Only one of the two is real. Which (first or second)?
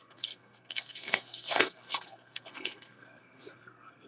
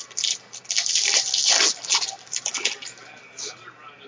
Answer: second